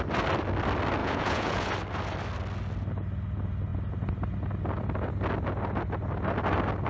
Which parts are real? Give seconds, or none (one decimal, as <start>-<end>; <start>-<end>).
0.0-1.0; 1.7-6.9